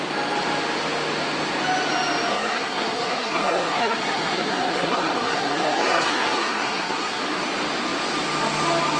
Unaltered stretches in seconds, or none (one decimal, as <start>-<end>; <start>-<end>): 0.0-2.3; 7.2-9.0